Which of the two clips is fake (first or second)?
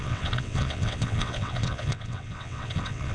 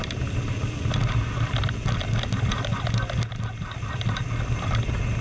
first